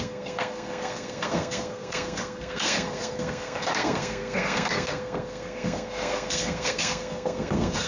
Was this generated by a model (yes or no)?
yes